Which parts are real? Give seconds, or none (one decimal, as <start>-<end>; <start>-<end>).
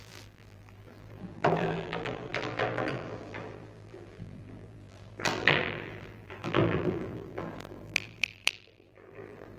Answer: none